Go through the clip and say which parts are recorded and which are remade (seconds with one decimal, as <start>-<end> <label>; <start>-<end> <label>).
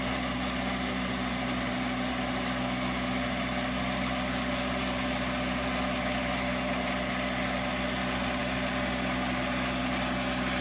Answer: 0.0-10.6 recorded